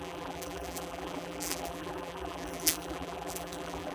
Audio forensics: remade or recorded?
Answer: remade